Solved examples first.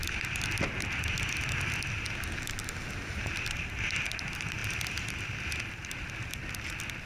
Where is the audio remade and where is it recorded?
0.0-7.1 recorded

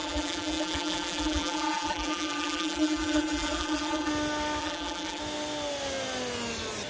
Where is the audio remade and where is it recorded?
0.0-4.1 remade; 4.1-4.6 recorded; 4.6-5.2 remade; 5.2-6.9 recorded

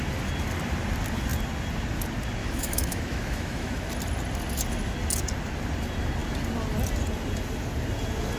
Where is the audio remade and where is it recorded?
0.0-2.4 recorded; 2.4-3.9 remade; 3.9-8.4 recorded

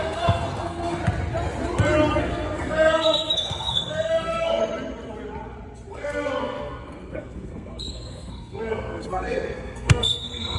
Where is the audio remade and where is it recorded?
0.0-1.0 remade; 1.0-2.2 recorded; 2.2-4.6 remade; 4.6-5.9 recorded; 5.9-10.6 remade

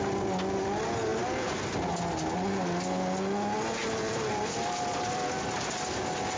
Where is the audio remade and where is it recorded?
0.0-1.1 recorded; 1.1-1.7 remade; 1.7-3.8 recorded; 3.8-5.3 remade; 5.3-6.4 recorded

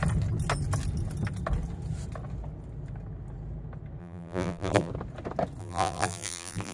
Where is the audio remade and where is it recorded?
0.0-4.0 recorded; 4.0-4.9 remade; 4.9-5.6 recorded; 5.6-6.7 remade

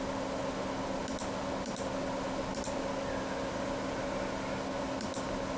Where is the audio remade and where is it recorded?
0.0-5.6 recorded